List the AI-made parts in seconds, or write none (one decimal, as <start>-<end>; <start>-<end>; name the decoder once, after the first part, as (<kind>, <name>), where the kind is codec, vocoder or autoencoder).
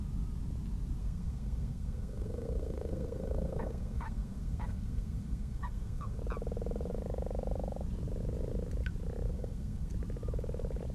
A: 1.0-6.2 (codec, SNAC); 9.3-9.9